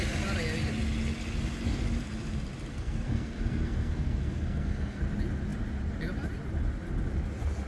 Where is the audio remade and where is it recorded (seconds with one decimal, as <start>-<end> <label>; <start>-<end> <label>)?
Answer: 0.0-2.7 recorded; 2.7-5.0 remade; 5.0-7.7 recorded